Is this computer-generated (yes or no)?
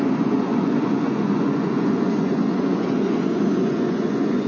yes